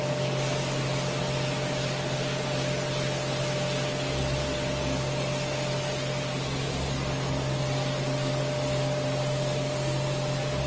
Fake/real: real